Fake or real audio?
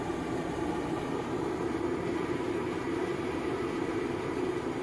fake